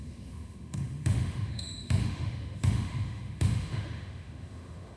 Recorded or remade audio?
remade